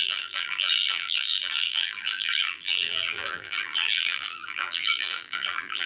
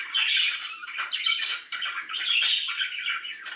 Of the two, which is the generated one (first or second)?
first